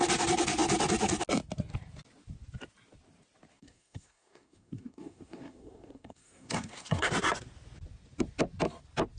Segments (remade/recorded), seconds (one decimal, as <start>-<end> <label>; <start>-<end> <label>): 0.0-3.5 recorded; 3.5-7.1 remade; 7.1-9.2 recorded